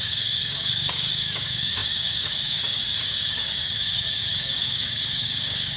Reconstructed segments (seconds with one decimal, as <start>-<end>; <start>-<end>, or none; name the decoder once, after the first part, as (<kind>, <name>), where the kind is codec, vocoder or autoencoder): 0.0-5.8 (codec, DAC)